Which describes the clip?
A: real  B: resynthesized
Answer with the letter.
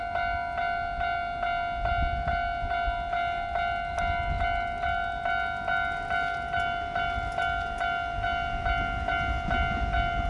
A